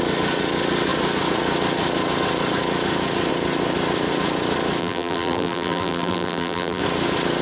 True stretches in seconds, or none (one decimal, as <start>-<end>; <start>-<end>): 0.0-4.8; 6.8-7.4